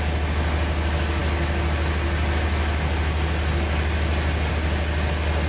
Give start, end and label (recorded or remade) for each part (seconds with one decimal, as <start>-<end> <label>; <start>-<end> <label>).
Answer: 0.0-5.5 recorded

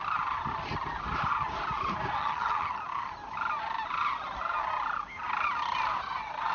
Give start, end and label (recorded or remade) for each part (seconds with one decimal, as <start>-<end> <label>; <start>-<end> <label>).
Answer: 0.0-2.2 recorded; 2.2-2.8 remade; 2.8-6.5 recorded

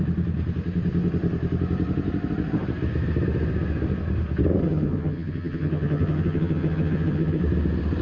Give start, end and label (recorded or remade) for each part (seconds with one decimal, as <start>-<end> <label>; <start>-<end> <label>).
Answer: 0.0-4.6 recorded; 4.6-7.4 remade; 7.4-8.0 recorded

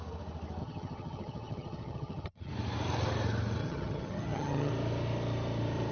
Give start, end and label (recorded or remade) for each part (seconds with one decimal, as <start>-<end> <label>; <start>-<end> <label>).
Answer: 0.0-0.6 recorded; 0.6-2.5 remade; 2.5-3.6 recorded; 3.6-4.7 remade; 4.7-5.9 recorded